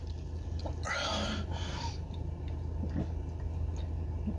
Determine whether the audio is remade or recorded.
recorded